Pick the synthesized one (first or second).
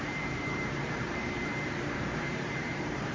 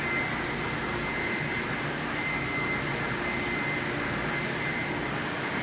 first